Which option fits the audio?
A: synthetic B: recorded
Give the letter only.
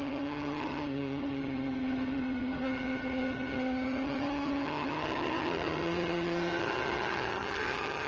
A